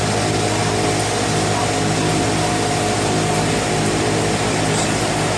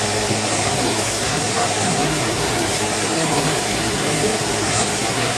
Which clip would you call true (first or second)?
first